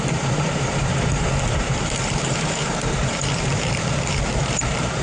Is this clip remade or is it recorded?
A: remade